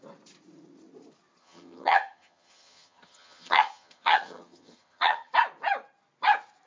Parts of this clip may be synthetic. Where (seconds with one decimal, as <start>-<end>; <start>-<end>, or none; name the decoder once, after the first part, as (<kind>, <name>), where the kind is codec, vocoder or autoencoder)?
1.4-5.3 (vocoder, HiFi-GAN)